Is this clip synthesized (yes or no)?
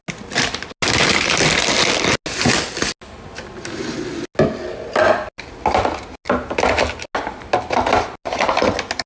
no